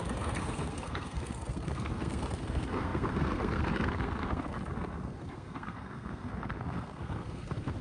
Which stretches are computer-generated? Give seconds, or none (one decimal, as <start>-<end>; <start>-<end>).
0.0-7.8

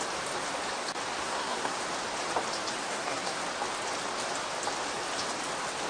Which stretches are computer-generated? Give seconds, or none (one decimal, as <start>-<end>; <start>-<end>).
1.2-1.8; 2.8-3.4

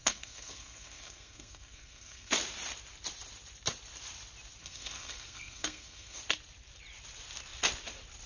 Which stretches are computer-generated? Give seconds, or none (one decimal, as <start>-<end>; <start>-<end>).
0.0-2.3; 4.6-6.2

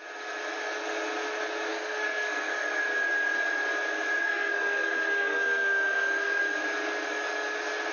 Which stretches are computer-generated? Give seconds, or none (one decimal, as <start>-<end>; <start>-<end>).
1.7-2.8; 4.2-6.4

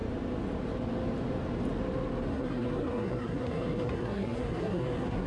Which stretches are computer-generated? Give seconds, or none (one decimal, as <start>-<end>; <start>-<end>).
2.3-5.3